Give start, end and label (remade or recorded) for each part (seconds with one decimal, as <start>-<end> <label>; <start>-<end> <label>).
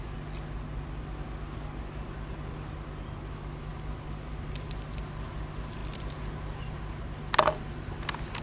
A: 0.0-8.4 recorded